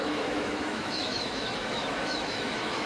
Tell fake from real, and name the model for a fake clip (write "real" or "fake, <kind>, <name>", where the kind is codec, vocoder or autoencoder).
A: fake, autoencoder, DAC-VAE